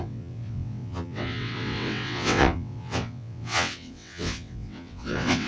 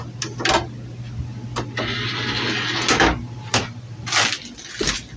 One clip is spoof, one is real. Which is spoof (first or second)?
first